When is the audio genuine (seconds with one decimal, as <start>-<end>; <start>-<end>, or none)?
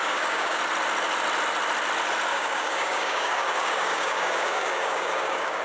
0.6-2.3